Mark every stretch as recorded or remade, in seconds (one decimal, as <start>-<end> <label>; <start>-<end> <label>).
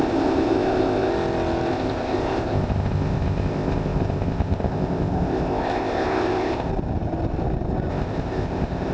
0.0-1.1 remade; 1.1-1.7 recorded; 1.7-6.7 remade; 6.7-7.9 recorded; 7.9-8.9 remade